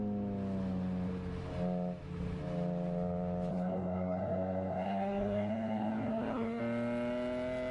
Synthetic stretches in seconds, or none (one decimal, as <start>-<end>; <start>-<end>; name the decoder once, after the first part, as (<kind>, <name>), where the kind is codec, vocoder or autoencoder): 3.5-6.6 (codec, SNAC)